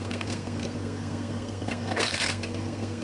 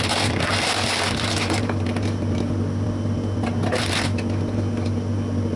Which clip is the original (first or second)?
second